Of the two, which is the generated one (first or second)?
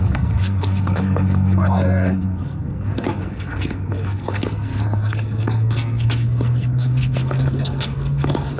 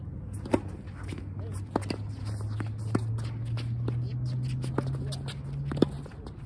first